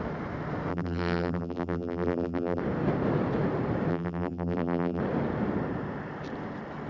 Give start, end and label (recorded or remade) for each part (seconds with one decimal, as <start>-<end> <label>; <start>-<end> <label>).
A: 0.0-0.7 recorded; 0.7-2.6 remade; 2.6-3.9 recorded; 3.9-5.0 remade; 5.0-6.9 recorded